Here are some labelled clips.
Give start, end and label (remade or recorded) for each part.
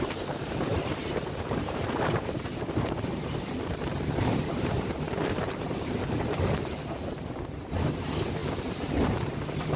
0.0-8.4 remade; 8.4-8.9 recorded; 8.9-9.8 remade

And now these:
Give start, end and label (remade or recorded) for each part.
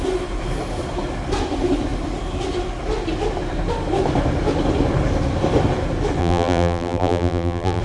0.0-6.2 recorded; 6.2-7.8 remade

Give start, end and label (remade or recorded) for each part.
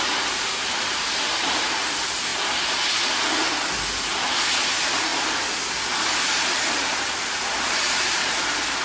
0.0-2.3 remade; 2.3-4.1 recorded; 4.1-5.1 remade; 5.1-6.0 recorded; 6.0-8.8 remade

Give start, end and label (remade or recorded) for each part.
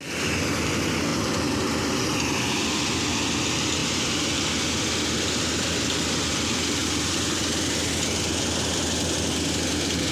0.0-1.1 recorded; 1.1-1.8 remade; 1.8-6.8 recorded; 6.8-7.4 remade; 7.4-10.1 recorded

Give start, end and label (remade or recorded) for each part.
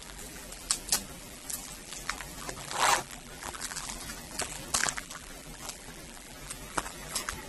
0.0-7.5 remade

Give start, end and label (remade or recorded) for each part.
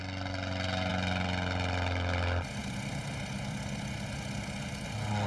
0.0-2.6 recorded; 2.6-3.6 remade; 3.6-5.3 recorded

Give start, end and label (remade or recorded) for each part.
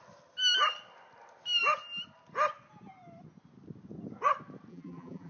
0.0-4.7 recorded; 4.7-5.3 remade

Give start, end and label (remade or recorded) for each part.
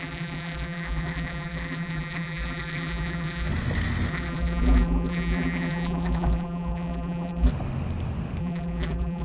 0.0-3.5 remade; 3.5-4.1 recorded; 4.1-7.5 remade; 7.5-8.4 recorded; 8.4-9.2 remade